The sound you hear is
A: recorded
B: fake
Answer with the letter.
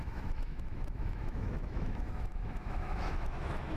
B